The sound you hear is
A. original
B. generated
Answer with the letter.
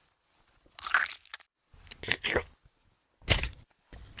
A